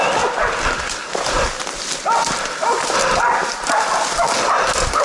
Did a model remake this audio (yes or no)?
no